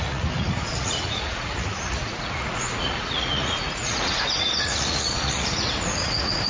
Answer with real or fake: fake